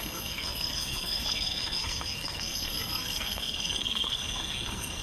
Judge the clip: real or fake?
fake